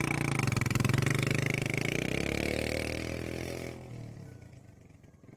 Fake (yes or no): no